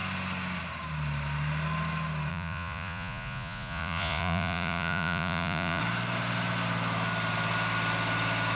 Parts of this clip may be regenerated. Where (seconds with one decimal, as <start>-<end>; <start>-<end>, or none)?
2.3-5.8